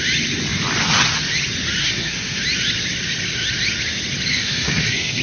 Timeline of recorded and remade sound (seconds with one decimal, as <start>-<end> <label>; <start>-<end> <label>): 0.0-1.8 recorded; 1.8-2.4 remade; 2.4-4.3 recorded; 4.3-5.2 remade